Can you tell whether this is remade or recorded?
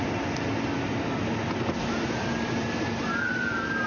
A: recorded